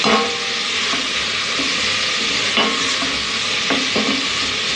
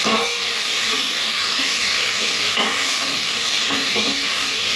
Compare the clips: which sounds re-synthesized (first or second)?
second